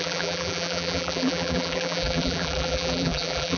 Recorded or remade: remade